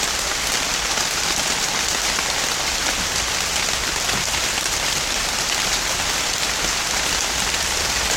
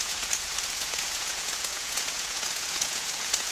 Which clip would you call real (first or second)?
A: first